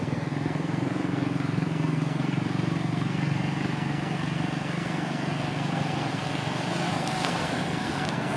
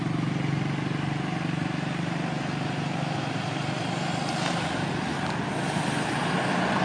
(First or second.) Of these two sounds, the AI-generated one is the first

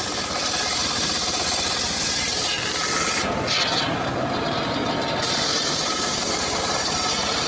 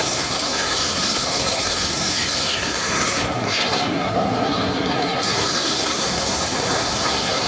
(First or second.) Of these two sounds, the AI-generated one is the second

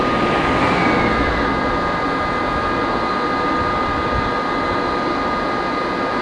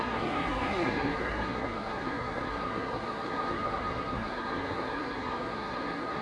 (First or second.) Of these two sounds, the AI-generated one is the second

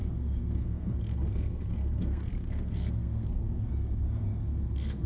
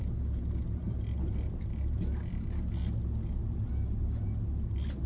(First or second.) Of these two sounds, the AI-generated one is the first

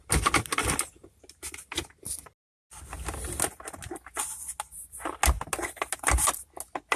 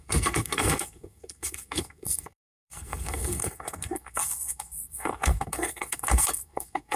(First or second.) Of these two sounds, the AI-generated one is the second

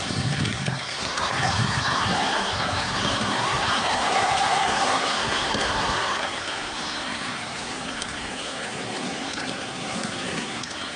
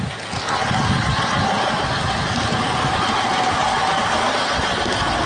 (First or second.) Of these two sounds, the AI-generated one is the first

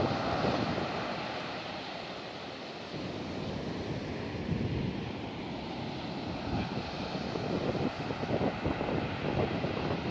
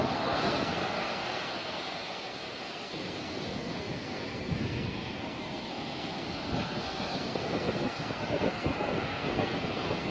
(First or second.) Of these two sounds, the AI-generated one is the second